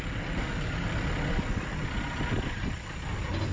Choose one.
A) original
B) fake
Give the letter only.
A